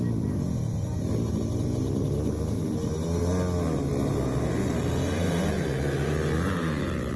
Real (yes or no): yes